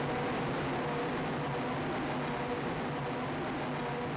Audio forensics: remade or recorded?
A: recorded